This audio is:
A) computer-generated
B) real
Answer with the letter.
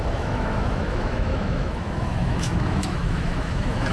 A